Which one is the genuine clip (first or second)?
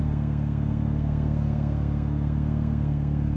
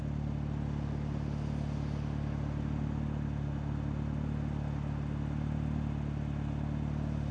second